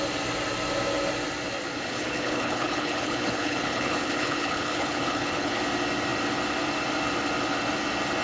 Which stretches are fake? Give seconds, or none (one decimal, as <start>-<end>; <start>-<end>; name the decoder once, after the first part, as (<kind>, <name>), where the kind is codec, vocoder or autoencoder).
1.7-5.6 (codec, HILCodec)